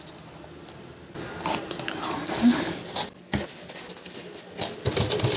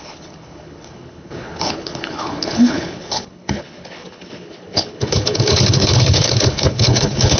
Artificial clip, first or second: second